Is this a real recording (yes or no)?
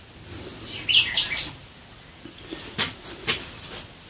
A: yes